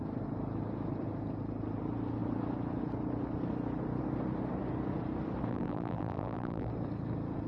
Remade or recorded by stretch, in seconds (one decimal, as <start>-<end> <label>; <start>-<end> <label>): 0.0-5.5 recorded; 5.5-6.7 remade; 6.7-7.5 recorded